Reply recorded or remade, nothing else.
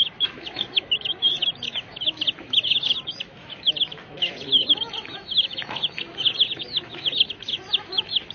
remade